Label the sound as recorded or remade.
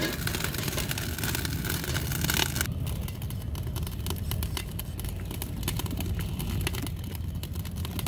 recorded